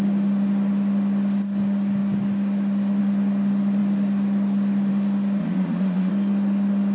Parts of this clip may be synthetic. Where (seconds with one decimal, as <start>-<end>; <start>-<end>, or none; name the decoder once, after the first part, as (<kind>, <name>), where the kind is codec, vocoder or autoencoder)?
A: 5.4-6.1 (vocoder, Vocos)